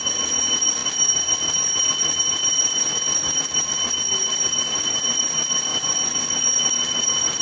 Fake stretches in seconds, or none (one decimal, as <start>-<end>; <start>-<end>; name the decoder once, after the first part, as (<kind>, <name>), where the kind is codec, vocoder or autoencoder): 5.7-6.4 (vocoder, Vocos)